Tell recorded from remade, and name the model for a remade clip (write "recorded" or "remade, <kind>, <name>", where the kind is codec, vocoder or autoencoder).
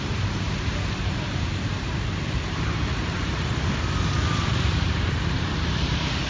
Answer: remade, vocoder, BigVGAN v2